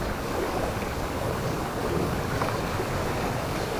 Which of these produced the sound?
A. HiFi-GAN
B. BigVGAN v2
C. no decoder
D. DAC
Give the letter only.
D